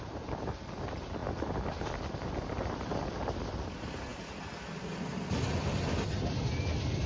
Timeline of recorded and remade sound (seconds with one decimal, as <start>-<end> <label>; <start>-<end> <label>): 0.0-7.1 recorded